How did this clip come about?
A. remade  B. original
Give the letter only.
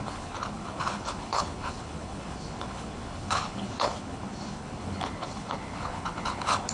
A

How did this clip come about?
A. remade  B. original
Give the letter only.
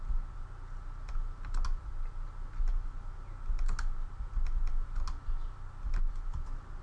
B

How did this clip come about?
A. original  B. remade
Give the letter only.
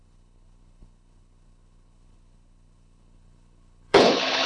B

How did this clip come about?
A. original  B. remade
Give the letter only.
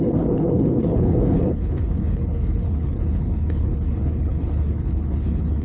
B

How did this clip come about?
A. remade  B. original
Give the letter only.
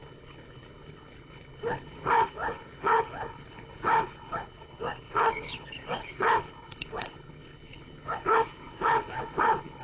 A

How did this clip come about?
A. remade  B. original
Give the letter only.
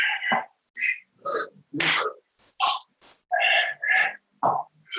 B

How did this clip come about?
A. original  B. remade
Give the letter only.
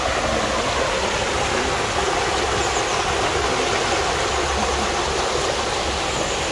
A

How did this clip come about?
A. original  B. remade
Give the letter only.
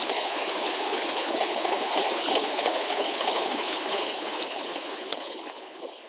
B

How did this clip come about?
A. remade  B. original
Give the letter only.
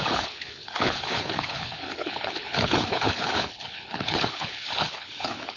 A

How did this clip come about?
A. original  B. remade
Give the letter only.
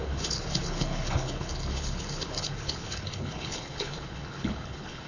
B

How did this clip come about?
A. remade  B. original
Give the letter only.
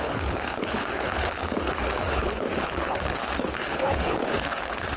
A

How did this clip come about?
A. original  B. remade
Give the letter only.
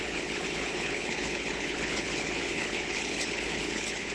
B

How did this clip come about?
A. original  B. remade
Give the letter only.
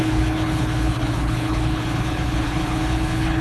B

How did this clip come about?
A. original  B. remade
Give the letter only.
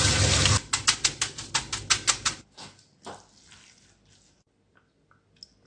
A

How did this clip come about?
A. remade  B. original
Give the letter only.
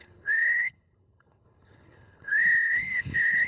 A